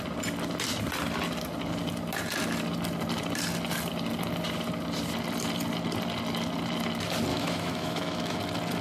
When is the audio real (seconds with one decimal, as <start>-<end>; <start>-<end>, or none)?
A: 0.0-7.3; 8.4-8.8